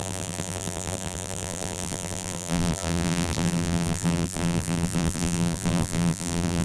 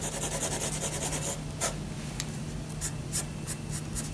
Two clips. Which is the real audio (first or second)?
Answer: second